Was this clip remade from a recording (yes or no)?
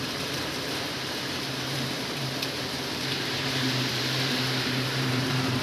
yes